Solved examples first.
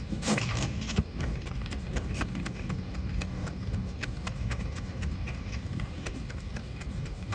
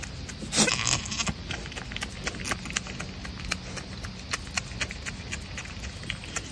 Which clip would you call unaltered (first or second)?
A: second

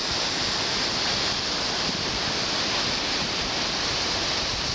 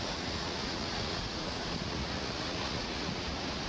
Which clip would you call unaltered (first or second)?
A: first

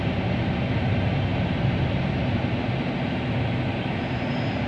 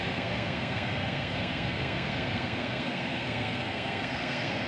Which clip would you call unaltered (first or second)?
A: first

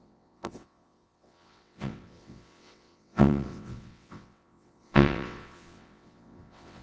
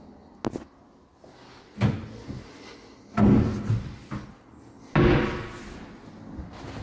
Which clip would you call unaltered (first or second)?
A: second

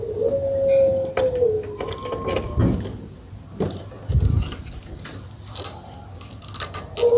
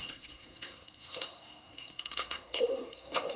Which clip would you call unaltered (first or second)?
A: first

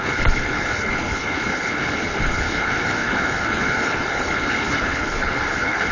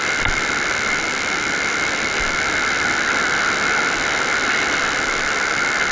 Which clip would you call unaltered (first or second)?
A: second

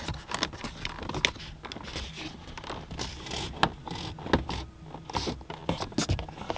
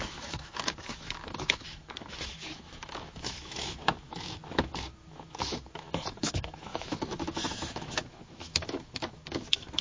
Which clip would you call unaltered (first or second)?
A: first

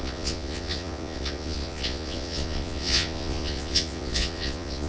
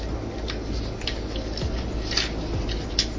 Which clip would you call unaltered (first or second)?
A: second